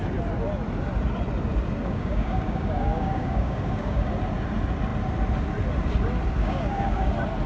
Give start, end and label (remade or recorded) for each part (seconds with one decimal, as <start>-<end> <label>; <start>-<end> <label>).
0.0-1.8 recorded; 1.8-4.1 remade; 4.1-6.4 recorded; 6.4-7.1 remade; 7.1-7.5 recorded